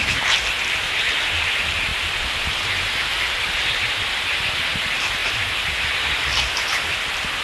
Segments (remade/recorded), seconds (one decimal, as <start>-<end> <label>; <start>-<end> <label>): 0.0-7.4 recorded